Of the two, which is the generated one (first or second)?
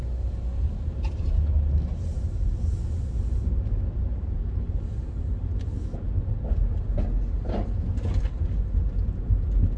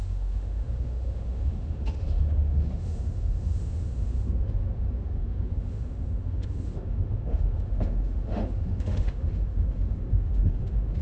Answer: second